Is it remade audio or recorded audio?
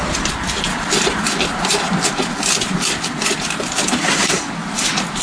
recorded